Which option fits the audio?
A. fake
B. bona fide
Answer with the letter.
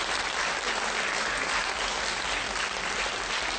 B